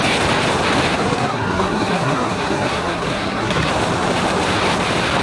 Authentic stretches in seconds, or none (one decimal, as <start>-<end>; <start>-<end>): 0.0-1.0; 3.7-5.2